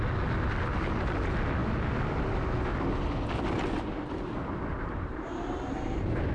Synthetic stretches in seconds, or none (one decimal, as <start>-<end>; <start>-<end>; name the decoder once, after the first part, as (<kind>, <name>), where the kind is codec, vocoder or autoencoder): 4.7-6.3 (vocoder, BigVGAN v2)